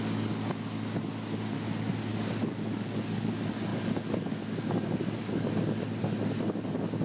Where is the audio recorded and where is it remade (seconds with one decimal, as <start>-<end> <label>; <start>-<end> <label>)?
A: 0.0-2.1 recorded; 2.1-3.3 remade; 3.3-3.7 recorded; 3.7-5.5 remade; 5.5-7.0 recorded

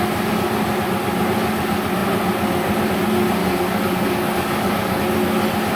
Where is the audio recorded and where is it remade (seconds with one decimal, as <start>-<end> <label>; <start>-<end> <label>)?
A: 0.0-3.4 recorded; 3.4-5.0 remade; 5.0-5.8 recorded

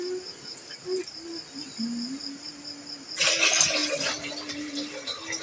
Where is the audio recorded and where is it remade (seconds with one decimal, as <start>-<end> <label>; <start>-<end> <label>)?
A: 0.0-5.4 recorded

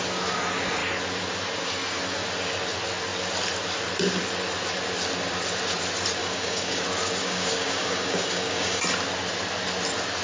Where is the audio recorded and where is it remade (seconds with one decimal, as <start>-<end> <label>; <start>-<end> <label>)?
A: 0.0-6.2 recorded; 6.2-6.8 remade; 6.8-7.2 recorded; 7.2-8.8 remade; 8.8-10.2 recorded

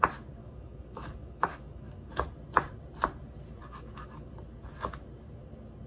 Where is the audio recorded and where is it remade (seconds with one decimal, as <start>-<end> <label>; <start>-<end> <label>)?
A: 0.0-0.4 recorded; 0.4-2.1 remade; 2.1-3.6 recorded; 3.6-4.3 remade; 4.3-5.9 recorded

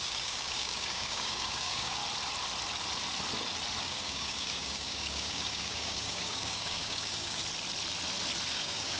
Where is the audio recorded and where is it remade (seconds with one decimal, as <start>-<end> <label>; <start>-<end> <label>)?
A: 0.0-2.0 remade; 2.0-3.8 recorded; 3.8-7.4 remade; 7.4-8.5 recorded; 8.5-9.0 remade

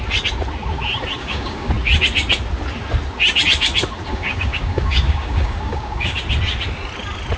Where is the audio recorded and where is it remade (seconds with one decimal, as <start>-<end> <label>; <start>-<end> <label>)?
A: 0.0-1.2 recorded; 1.2-1.7 remade; 1.7-4.1 recorded; 4.1-6.2 remade; 6.2-7.4 recorded

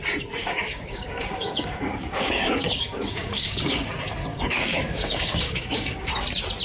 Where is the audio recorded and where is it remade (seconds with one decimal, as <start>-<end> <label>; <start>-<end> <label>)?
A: 0.0-0.4 recorded; 0.4-3.9 remade; 3.9-4.3 recorded; 4.3-6.1 remade; 6.1-6.6 recorded